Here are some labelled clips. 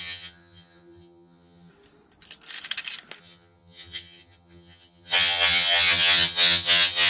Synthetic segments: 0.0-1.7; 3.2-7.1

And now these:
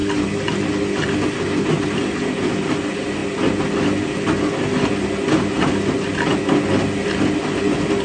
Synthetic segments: none

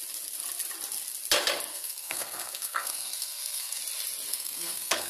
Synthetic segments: 1.7-3.8; 4.3-5.1

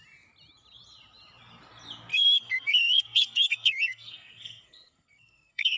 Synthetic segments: 2.1-5.8

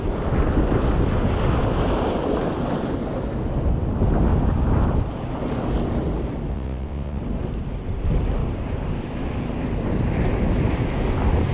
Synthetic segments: 6.5-7.2

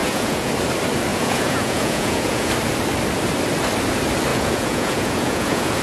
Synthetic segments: 0.0-0.5; 1.1-2.5; 4.3-5.8

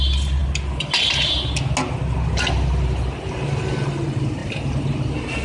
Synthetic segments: none

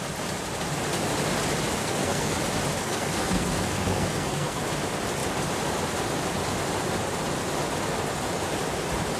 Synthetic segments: 1.8-2.4; 2.8-4.6